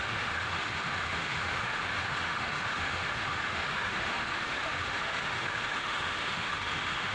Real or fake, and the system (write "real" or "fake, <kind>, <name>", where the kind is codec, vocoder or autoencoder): fake, autoencoder, DAC-VAE